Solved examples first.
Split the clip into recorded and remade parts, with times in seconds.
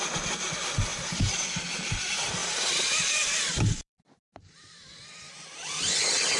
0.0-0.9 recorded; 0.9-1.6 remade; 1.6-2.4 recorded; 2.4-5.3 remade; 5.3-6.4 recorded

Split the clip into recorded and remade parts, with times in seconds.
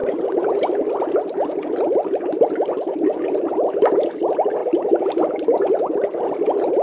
0.0-1.0 remade; 1.0-6.8 recorded